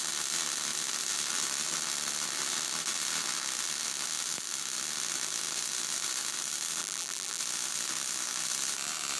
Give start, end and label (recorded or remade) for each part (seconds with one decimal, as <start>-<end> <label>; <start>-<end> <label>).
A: 0.0-6.8 recorded; 6.8-7.4 remade; 7.4-9.2 recorded